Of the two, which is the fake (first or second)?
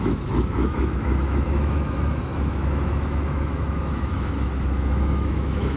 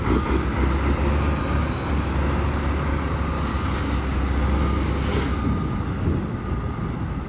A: first